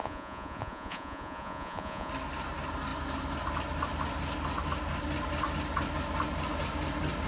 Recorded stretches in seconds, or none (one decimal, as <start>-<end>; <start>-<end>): 2.1-7.3